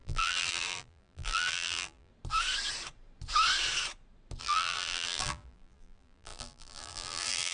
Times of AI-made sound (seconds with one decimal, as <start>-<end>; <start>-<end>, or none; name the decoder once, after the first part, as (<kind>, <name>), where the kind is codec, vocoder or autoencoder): 0.0-2.1 (vocoder, BigVGAN v2); 4.4-7.5